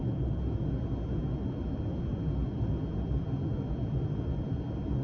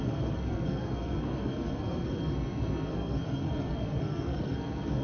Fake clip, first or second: second